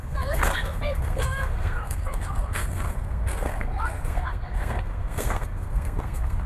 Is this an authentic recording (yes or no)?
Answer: no